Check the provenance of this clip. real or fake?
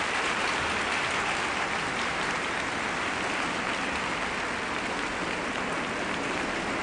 real